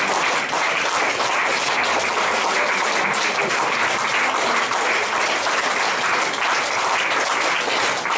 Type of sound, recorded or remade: recorded